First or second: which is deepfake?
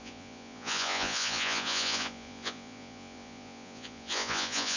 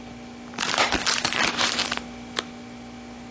first